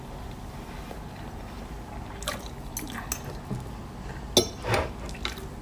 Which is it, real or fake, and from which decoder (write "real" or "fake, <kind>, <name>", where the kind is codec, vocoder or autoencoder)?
real